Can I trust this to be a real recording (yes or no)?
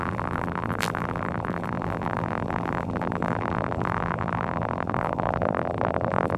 no